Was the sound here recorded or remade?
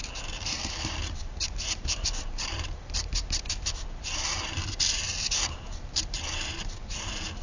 remade